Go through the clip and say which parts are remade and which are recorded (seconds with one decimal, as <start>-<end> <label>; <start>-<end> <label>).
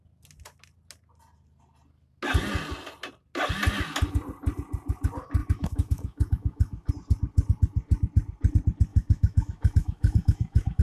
0.0-5.4 recorded; 5.4-6.9 remade; 6.9-8.9 recorded; 8.9-10.8 remade